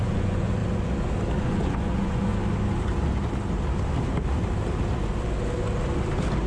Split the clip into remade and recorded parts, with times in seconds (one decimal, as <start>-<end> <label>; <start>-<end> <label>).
0.0-0.6 remade; 0.6-1.4 recorded; 1.4-2.3 remade; 2.3-6.5 recorded